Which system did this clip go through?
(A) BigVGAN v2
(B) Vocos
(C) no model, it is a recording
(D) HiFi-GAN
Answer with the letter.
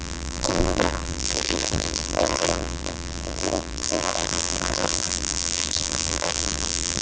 A